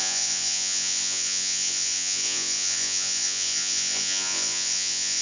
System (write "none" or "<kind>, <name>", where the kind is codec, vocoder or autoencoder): vocoder, Vocos